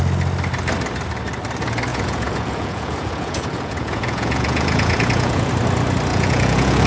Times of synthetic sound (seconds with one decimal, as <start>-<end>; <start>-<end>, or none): 1.9-5.5; 6.1-6.9